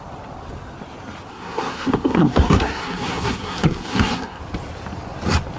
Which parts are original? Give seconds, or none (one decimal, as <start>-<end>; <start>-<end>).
0.0-1.3; 4.4-5.6